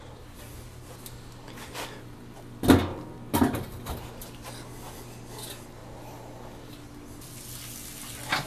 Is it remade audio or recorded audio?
recorded